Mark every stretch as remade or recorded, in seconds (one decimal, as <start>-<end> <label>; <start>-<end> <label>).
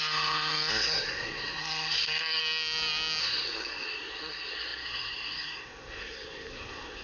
0.0-2.4 remade; 2.4-3.2 recorded; 3.2-7.0 remade